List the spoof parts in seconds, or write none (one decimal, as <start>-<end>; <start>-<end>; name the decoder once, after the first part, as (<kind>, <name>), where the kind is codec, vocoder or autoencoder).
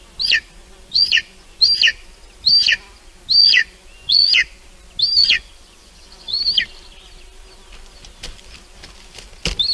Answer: 0.6-1.6 (vocoder, Vocos); 3.4-4.3; 5.2-6.4